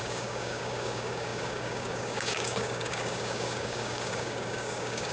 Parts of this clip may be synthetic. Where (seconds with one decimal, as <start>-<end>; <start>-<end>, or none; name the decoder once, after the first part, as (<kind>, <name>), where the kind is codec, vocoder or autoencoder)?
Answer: 0.0-5.1 (codec, DAC)

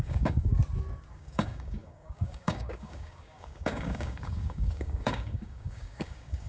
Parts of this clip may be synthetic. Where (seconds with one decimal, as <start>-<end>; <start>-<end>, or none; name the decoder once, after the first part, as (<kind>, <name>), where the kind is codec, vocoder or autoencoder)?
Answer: 0.0-0.6 (codec, DAC); 1.1-6.5

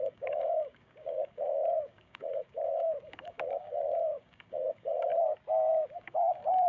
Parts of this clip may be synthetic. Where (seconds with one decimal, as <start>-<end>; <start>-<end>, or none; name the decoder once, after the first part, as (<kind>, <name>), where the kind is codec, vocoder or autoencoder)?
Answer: 0.0-5.1 (codec, DAC); 5.9-6.7

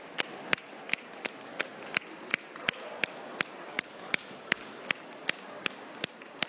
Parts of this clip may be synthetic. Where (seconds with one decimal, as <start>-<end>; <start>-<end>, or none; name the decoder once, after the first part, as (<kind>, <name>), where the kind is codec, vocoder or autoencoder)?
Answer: 3.7-4.8 (codec, DAC)